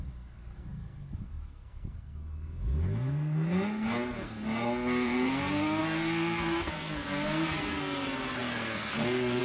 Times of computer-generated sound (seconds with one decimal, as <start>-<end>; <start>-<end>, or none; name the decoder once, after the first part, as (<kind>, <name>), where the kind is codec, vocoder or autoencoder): 0.0-9.4 (codec, SNAC)